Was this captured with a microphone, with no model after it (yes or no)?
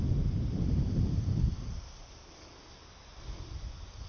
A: yes